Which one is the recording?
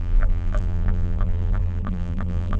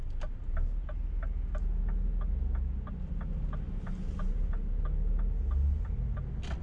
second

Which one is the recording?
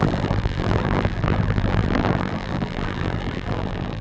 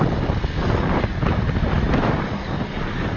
second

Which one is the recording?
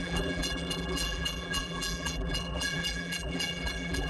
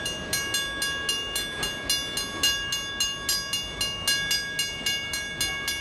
second